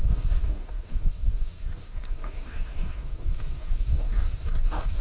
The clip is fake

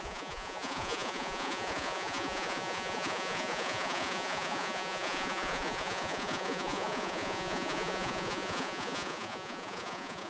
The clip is fake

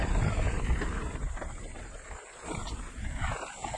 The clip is fake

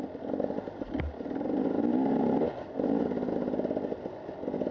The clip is real